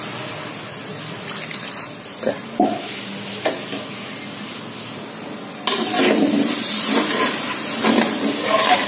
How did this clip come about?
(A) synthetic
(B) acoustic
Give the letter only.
B